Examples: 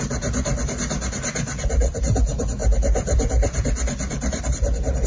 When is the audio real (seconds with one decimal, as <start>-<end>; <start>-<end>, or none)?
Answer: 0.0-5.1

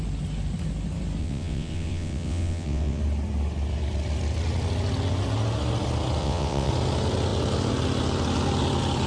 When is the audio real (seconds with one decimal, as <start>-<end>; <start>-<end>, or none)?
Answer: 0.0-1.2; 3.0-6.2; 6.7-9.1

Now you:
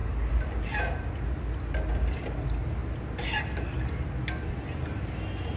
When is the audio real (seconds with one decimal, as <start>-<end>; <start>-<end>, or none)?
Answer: 0.0-5.6

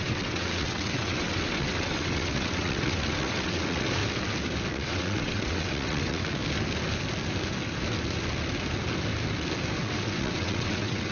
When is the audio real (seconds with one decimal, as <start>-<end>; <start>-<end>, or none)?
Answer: 4.0-4.7; 6.4-9.8

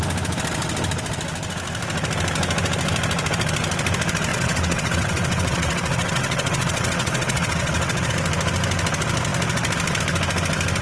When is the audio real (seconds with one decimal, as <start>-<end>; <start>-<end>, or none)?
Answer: 0.0-4.3; 8.1-10.8

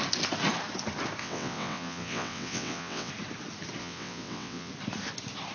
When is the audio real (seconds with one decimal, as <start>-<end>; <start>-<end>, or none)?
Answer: 0.0-1.2; 3.1-3.8; 4.7-5.5